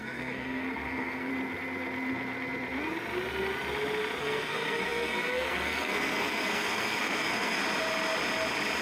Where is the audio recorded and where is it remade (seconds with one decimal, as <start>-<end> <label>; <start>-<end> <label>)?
0.0-1.3 remade; 1.3-4.2 recorded; 4.2-7.6 remade; 7.6-8.8 recorded